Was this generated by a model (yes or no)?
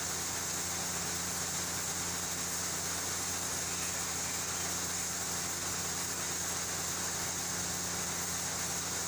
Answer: no